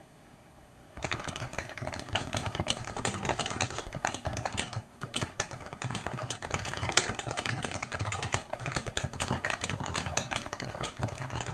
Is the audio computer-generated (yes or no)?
yes